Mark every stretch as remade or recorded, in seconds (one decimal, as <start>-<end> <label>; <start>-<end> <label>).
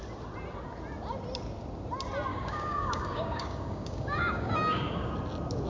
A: 0.0-2.3 recorded; 2.3-5.1 remade; 5.1-5.7 recorded